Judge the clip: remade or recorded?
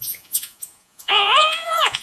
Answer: remade